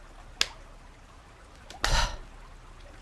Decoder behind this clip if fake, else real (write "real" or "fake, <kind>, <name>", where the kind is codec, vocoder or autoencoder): real